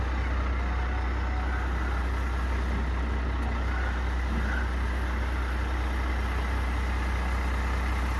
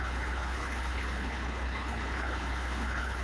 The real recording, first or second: first